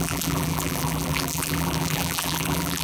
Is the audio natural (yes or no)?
no